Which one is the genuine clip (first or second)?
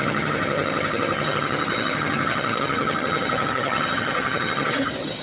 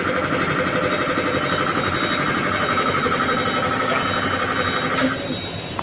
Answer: second